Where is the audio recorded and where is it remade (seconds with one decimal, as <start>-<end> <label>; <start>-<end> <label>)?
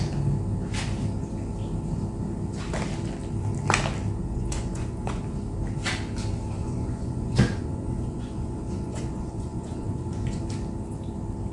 0.0-4.2 recorded; 4.2-5.2 remade; 5.2-6.6 recorded; 6.6-10.4 remade; 10.4-11.5 recorded